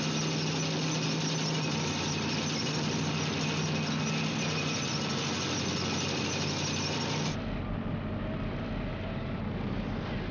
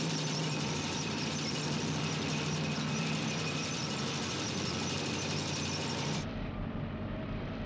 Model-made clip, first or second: second